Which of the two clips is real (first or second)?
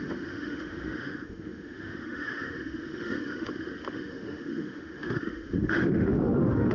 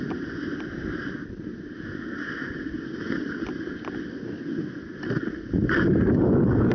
second